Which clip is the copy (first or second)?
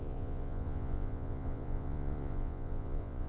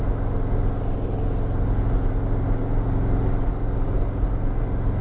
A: first